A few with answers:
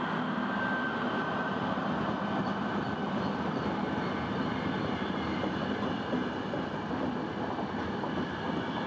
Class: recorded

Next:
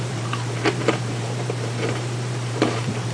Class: remade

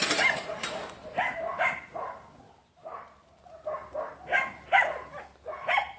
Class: recorded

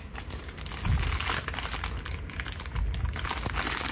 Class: recorded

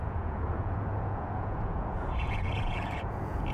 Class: remade